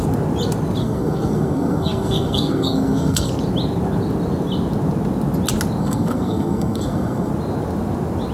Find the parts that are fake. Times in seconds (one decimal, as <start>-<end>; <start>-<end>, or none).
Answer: 0.8-3.3; 5.8-7.3